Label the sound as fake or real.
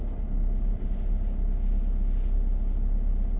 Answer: real